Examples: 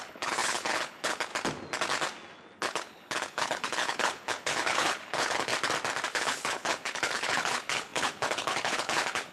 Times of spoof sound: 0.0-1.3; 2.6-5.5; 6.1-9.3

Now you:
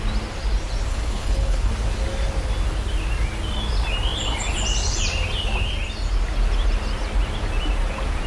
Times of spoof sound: 0.9-1.7

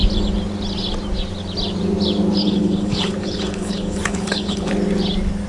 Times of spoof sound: 2.4-4.7

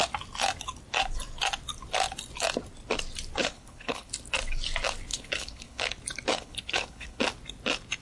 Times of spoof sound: 3.4-4.1; 5.1-5.8; 6.3-7.2

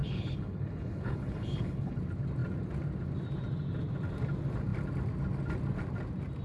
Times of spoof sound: 0.0-2.0

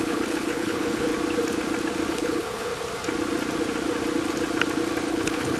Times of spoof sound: 0.0-1.1; 2.1-2.7; 5.1-5.6